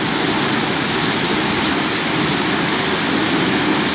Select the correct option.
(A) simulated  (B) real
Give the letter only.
B